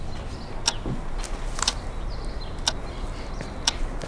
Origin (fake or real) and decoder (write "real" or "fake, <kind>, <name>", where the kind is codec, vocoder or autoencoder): real